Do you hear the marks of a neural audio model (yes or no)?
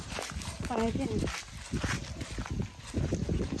no